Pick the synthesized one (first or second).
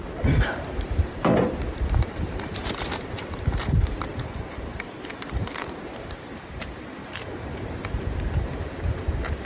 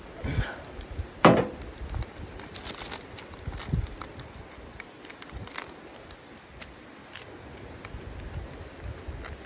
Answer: first